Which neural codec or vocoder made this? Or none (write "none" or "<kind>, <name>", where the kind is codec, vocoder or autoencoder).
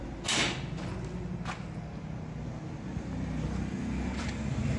none